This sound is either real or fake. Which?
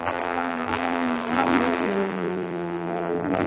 fake